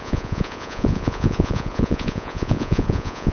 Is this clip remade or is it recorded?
remade